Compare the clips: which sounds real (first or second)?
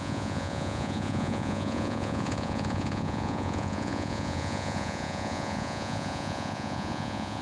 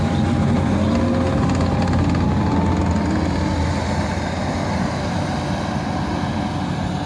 second